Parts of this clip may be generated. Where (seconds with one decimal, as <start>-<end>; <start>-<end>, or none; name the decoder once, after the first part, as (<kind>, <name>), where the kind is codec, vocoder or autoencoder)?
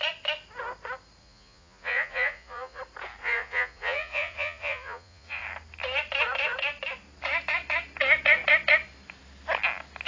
1.2-2.8 (vocoder, Vocos); 3.2-5.4